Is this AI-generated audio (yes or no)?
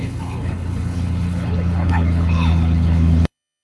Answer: yes